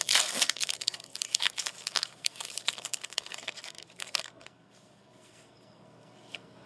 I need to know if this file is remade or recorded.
remade